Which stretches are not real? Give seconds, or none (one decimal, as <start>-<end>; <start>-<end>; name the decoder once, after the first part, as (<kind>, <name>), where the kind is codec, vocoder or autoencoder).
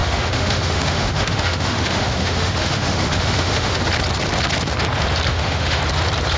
0.0-3.8 (autoencoder, DAC-VAE); 5.3-5.8